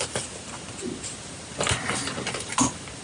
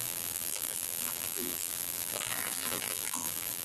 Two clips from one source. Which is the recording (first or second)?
first